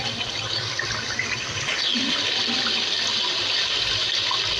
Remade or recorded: recorded